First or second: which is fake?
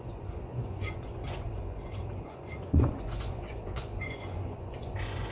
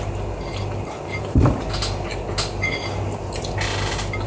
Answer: first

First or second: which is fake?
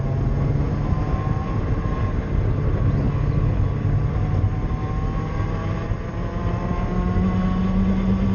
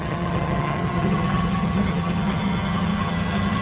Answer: second